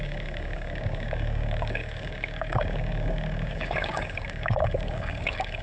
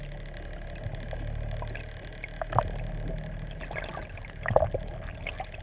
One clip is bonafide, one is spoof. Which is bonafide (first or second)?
second